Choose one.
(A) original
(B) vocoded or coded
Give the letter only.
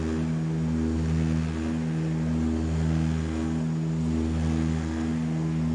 A